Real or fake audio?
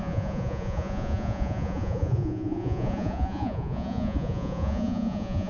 fake